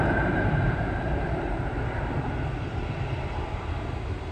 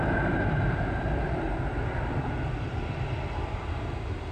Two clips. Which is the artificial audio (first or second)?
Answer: first